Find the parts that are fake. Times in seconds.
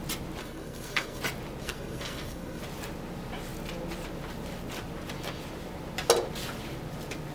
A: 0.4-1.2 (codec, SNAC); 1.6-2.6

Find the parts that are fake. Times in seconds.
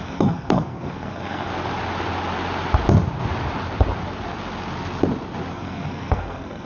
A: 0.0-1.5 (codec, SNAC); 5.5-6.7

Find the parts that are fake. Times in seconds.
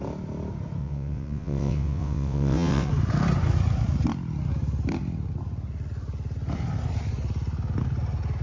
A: 0.8-2.9 (vocoder, WaveNeXt)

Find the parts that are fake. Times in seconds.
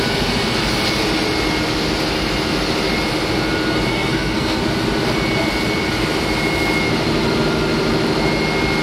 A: 3.9-4.6 (codec, SNAC)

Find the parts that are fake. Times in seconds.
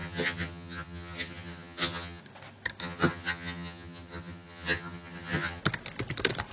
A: 0.0-2.2 (vocoder, HiFi-GAN); 2.8-5.6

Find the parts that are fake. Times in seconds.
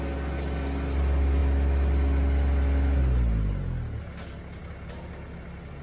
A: none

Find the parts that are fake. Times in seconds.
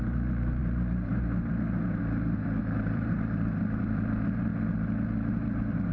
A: 0.0-4.5 (vocoder, BigVGAN v2); 5.3-5.9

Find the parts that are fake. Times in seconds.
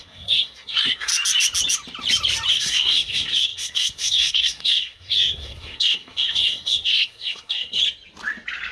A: 0.0-1.1 (codec, SNAC); 2.5-7.8